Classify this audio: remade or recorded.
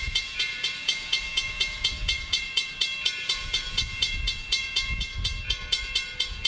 remade